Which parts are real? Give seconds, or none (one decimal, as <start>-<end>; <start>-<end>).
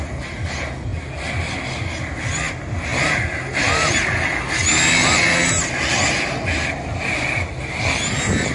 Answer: 0.0-8.5